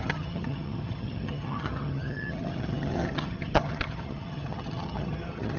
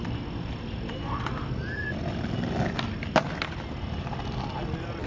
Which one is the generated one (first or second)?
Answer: first